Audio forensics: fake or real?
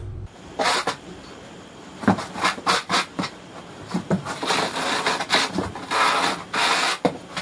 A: fake